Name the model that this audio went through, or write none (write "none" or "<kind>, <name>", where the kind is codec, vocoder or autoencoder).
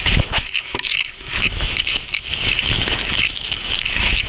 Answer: autoencoder, DAC-VAE